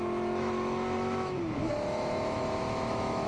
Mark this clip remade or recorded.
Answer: remade